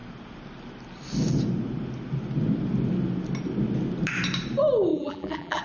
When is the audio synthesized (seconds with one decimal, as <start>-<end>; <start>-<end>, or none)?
4.9-5.6